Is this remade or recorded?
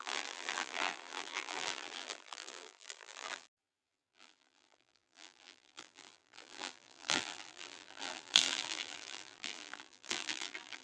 remade